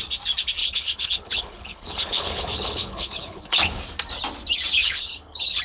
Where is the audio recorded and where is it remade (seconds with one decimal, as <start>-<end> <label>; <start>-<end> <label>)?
0.0-0.6 recorded; 0.6-3.8 remade; 3.8-4.8 recorded; 4.8-5.6 remade